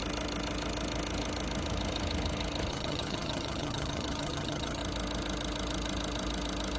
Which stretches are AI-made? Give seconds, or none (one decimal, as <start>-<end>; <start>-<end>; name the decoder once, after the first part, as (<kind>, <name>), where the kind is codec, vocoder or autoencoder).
2.7-4.8 (vocoder, HiFi-GAN)

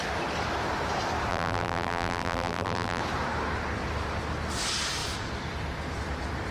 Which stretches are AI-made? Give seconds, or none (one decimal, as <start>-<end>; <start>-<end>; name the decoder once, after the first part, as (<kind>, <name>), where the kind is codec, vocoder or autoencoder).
1.3-3.0 (vocoder, BigVGAN v2)

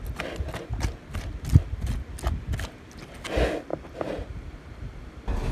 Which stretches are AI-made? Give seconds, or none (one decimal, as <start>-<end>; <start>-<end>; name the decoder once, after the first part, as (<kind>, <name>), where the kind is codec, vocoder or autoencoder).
none

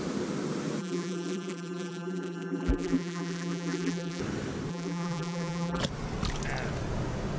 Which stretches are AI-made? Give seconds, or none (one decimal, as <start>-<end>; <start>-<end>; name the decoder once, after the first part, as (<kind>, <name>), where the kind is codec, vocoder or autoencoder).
0.8-4.2 (vocoder, BigVGAN v2); 4.7-5.8

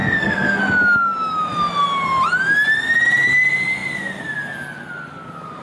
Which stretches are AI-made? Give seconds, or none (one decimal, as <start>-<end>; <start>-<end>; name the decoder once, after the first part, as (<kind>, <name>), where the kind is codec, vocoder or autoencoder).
0.0-0.6 (codec, SNAC)

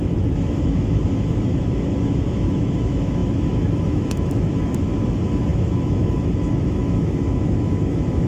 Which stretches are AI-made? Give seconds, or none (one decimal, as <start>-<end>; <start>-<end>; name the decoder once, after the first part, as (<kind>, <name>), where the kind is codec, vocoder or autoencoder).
0.0-8.3 (autoencoder, DAC-VAE)